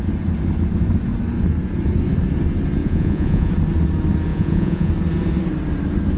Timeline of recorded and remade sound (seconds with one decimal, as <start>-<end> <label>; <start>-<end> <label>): 0.0-2.8 recorded; 2.8-3.5 remade; 3.5-4.3 recorded; 4.3-4.9 remade; 4.9-6.2 recorded